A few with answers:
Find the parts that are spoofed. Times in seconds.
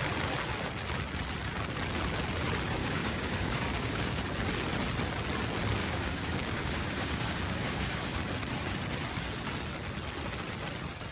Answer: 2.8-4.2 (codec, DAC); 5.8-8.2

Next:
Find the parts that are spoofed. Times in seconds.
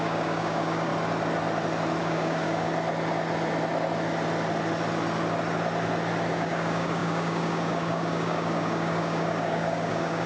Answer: 0.0-0.9 (codec, DAC); 2.0-2.7; 6.3-10.3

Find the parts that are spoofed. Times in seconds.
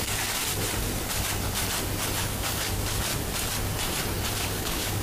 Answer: 0.0-0.4 (codec, DAC); 2.2-3.1; 4.3-5.0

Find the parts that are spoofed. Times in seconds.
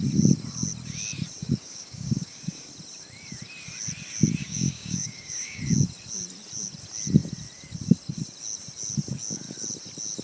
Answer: 1.4-2.7 (codec, DAC); 4.4-5.6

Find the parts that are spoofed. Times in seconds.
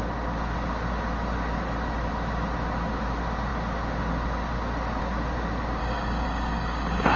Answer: 5.8-7.2 (codec, DAC)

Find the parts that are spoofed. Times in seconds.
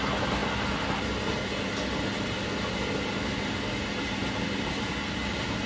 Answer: none